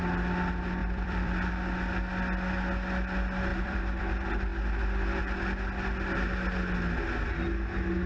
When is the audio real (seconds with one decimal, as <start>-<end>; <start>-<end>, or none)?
0.0-0.8; 1.5-3.5; 4.0-8.1